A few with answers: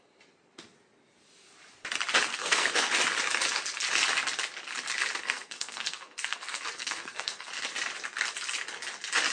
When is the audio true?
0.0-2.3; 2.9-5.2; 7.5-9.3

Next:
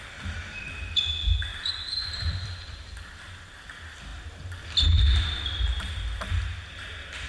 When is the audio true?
0.0-1.5; 2.9-7.3

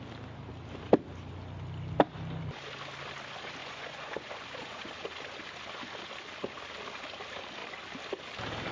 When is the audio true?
0.0-3.6; 4.9-8.7

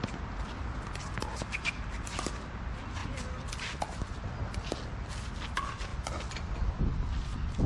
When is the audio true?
0.0-7.7

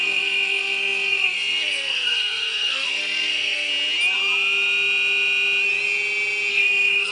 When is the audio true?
3.7-6.5

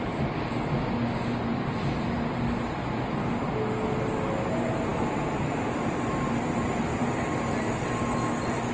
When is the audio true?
0.0-4.9; 8.0-8.7

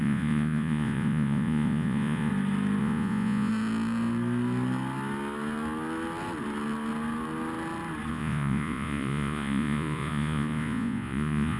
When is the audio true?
2.3-2.8; 3.5-8.1

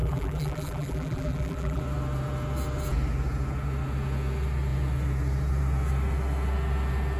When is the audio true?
1.8-7.2